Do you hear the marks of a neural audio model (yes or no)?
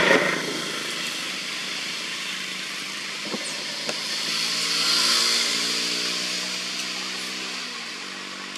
no